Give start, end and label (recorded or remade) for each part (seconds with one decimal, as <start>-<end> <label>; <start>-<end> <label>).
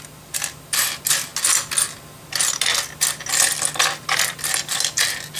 0.0-5.4 recorded